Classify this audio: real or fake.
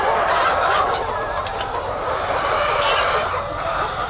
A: real